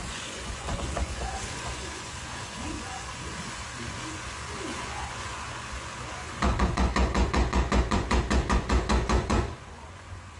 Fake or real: fake